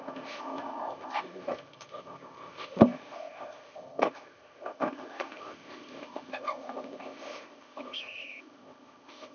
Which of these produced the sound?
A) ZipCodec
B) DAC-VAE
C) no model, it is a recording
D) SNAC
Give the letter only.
A